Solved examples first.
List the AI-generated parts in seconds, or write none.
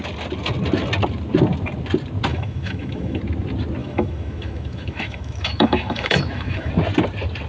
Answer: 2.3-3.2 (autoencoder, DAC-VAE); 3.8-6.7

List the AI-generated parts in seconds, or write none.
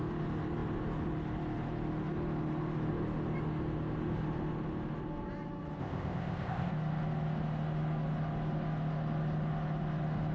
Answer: 5.8-6.7 (codec, ZipCodec)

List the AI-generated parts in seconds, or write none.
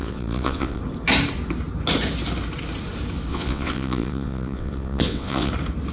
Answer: 0.0-0.8 (vocoder, WaveNeXt); 3.3-5.5